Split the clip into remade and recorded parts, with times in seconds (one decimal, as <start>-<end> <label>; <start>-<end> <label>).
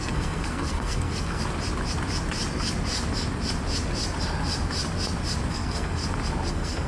0.0-1.4 remade; 1.4-5.5 recorded; 5.5-6.0 remade; 6.0-6.5 recorded; 6.5-6.9 remade